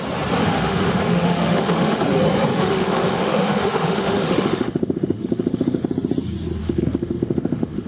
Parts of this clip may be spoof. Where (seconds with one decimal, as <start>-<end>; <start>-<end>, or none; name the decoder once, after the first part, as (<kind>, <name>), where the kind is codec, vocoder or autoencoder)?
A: 0.4-2.0 (autoencoder, DAC-VAE); 2.5-5.9; 6.6-7.9